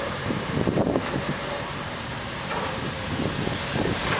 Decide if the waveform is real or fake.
fake